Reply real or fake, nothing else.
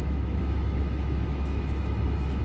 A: fake